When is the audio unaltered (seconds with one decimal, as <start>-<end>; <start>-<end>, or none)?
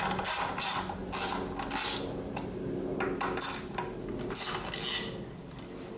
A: 0.0-6.0